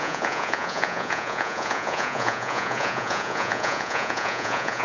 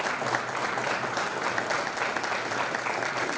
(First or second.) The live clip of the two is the second